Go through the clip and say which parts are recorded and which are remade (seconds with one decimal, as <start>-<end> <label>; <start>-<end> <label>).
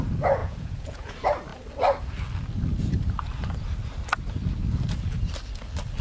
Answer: 0.0-0.4 recorded; 0.4-1.1 remade; 1.1-6.0 recorded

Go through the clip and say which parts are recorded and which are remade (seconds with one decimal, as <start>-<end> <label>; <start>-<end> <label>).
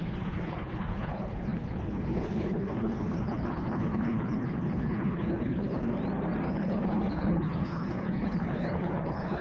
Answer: 0.0-5.9 remade; 5.9-6.5 recorded; 6.5-9.4 remade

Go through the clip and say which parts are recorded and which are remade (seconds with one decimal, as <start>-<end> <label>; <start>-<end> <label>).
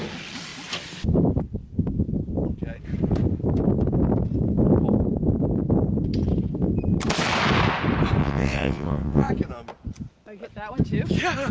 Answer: 0.0-8.2 recorded; 8.2-9.3 remade; 9.3-11.5 recorded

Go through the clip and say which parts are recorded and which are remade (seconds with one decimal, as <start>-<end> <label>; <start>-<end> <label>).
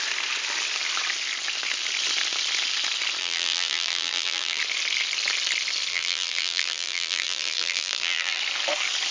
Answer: 0.0-3.2 recorded; 3.2-4.6 remade; 4.6-5.9 recorded; 5.9-8.4 remade; 8.4-9.1 recorded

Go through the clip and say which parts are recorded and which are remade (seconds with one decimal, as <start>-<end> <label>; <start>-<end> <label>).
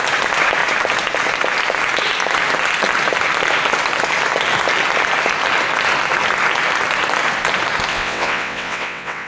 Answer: 0.0-7.9 recorded; 7.9-9.3 remade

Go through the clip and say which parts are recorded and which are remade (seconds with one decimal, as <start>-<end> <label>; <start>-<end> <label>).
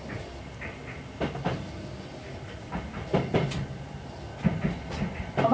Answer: 0.0-5.5 recorded